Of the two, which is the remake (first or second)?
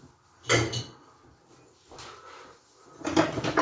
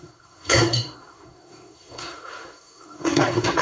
second